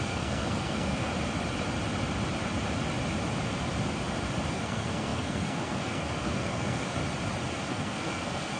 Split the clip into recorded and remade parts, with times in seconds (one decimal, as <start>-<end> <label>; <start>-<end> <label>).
0.0-1.1 remade; 1.1-4.5 recorded; 4.5-7.0 remade; 7.0-7.7 recorded; 7.7-8.6 remade